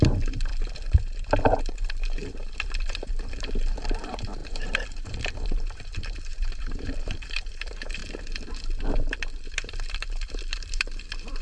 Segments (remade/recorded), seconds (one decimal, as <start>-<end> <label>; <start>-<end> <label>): 0.0-0.5 remade; 0.5-1.4 recorded; 1.4-8.0 remade; 8.0-9.5 recorded; 9.5-11.4 remade